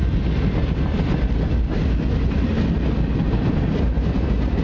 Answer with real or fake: real